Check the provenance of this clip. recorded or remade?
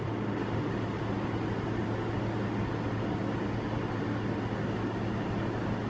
recorded